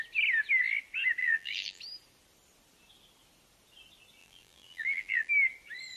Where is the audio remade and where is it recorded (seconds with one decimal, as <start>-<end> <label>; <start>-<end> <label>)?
0.0-1.2 recorded; 1.2-1.8 remade; 1.8-4.2 recorded; 4.2-5.3 remade; 5.3-6.0 recorded